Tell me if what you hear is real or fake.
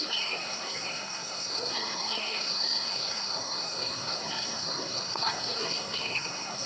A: fake